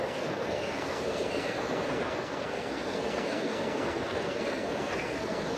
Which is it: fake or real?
fake